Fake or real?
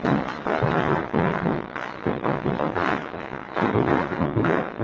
fake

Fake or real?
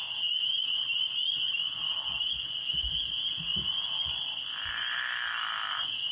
real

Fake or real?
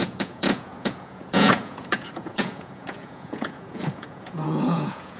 fake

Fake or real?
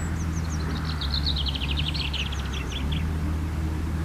real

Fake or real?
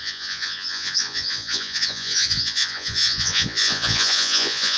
fake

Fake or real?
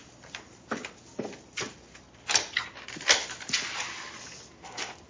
real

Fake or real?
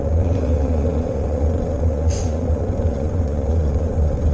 fake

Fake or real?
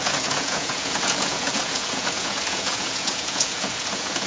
fake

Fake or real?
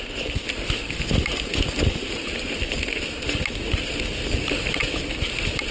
real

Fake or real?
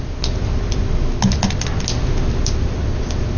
real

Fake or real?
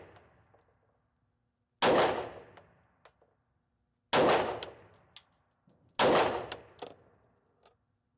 real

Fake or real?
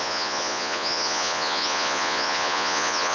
fake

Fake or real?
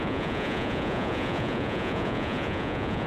fake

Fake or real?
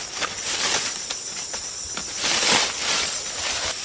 real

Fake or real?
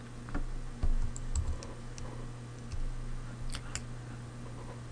real